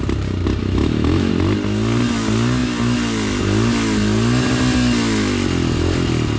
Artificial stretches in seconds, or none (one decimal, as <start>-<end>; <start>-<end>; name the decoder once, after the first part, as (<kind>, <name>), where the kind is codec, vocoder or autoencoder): 0.6-1.3 (autoencoder, DAC-VAE)